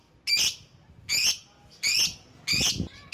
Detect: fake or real real